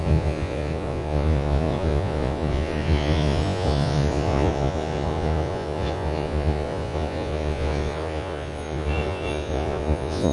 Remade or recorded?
remade